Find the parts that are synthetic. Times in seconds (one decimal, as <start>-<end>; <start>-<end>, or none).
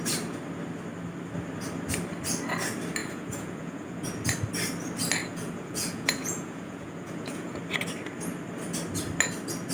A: 3.0-4.0; 5.2-7.6